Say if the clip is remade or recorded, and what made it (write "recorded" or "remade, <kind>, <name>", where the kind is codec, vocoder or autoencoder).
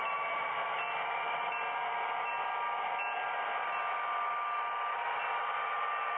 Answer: recorded